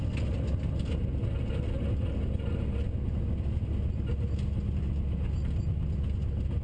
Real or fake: real